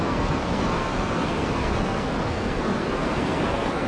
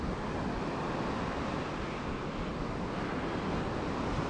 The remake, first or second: first